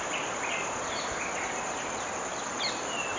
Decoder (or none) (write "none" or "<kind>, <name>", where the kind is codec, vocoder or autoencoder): none